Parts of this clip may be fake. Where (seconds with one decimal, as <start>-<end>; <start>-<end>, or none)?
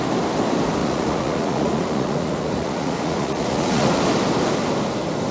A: 0.8-4.0